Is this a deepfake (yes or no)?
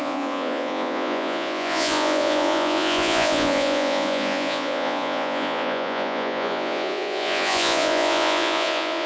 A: yes